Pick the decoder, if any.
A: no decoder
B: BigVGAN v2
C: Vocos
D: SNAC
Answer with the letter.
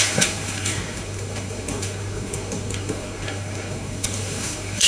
D